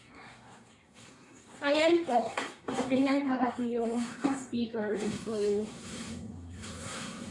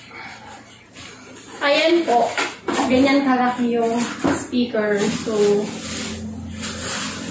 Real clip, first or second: second